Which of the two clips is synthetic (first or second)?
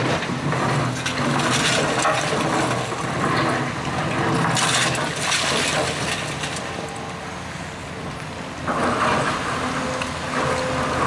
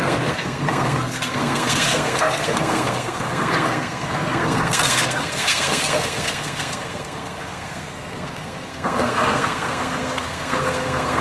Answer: second